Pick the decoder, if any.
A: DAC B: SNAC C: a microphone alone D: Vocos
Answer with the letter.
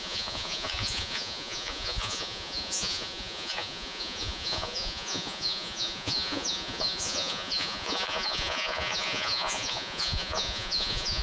D